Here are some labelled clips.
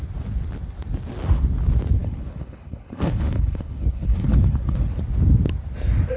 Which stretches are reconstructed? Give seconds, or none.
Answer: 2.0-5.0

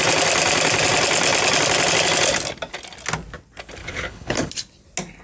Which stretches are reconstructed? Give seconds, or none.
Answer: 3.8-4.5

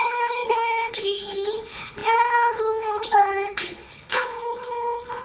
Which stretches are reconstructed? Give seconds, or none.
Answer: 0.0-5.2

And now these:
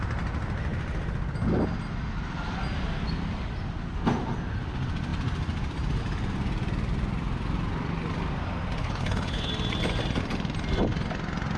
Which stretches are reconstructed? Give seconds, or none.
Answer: 8.8-9.5